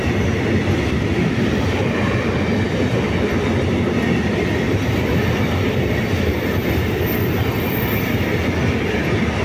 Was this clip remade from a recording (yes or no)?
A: no